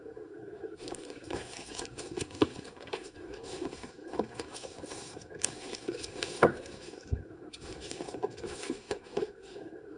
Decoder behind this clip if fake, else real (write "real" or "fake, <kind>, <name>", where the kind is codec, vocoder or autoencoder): fake, codec, SNAC